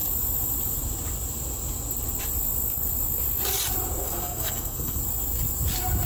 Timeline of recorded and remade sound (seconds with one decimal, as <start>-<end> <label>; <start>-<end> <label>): 0.0-4.0 recorded; 4.0-5.0 remade; 5.0-6.1 recorded